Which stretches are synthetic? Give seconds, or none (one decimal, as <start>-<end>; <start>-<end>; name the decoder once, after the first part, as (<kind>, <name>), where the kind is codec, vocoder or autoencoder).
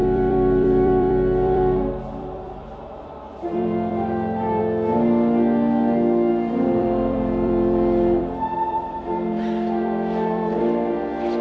0.0-4.6 (vocoder, BigVGAN v2); 6.3-10.6